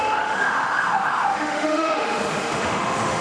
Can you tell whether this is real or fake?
fake